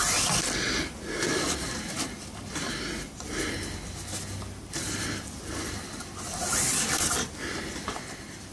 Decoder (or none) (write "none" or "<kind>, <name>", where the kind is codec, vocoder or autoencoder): none